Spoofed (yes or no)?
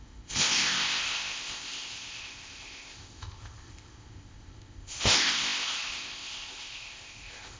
yes